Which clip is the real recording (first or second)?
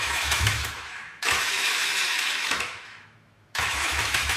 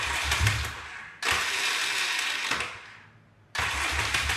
second